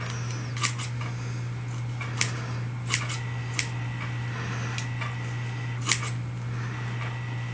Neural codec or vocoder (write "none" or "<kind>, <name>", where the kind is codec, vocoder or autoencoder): none